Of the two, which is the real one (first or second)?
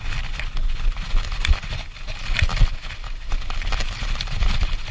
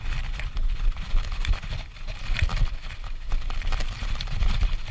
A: first